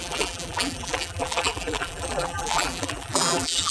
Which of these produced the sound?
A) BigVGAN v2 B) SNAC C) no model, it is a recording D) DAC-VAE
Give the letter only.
A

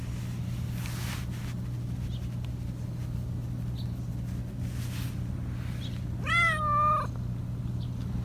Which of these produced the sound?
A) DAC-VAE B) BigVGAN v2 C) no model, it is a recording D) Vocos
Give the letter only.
C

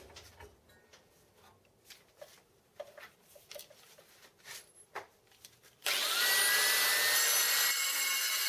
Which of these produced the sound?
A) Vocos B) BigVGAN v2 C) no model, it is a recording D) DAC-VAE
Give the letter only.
C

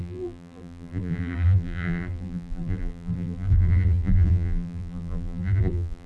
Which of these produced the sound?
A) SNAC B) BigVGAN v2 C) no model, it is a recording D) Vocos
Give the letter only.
B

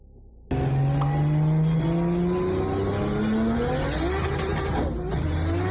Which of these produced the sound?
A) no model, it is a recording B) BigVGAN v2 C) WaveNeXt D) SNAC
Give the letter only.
A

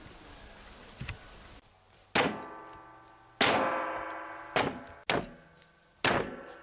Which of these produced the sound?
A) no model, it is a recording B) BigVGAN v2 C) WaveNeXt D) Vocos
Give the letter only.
A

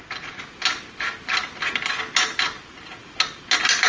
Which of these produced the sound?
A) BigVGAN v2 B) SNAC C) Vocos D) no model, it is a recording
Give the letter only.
D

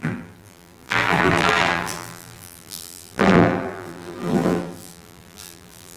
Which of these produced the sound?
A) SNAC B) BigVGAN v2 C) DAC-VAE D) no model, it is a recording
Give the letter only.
B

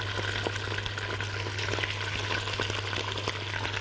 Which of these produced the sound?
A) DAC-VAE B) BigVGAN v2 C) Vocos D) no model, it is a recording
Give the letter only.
D